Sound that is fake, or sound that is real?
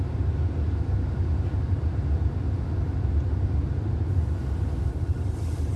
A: real